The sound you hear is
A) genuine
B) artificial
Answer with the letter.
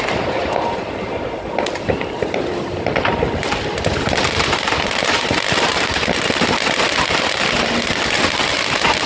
A